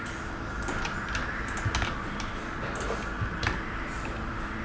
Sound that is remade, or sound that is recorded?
recorded